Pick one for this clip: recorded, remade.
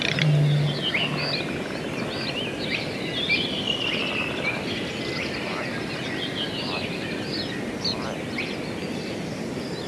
recorded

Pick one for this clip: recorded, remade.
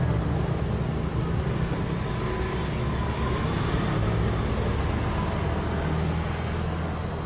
recorded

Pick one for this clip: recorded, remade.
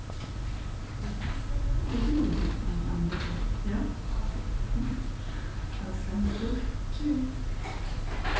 recorded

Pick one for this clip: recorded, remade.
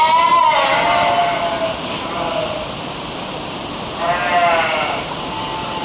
recorded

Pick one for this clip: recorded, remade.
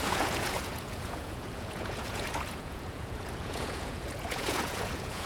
remade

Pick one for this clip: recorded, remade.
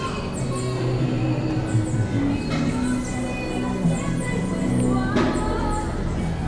recorded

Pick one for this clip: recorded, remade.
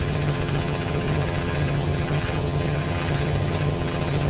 remade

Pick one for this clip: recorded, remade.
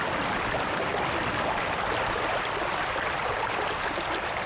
recorded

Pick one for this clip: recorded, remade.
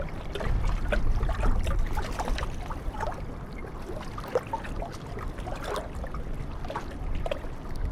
recorded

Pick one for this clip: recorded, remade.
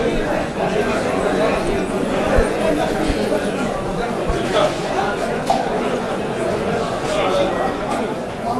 remade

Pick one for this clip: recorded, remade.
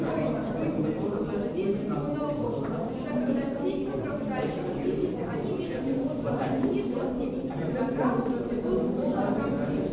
recorded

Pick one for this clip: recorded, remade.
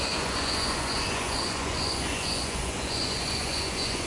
remade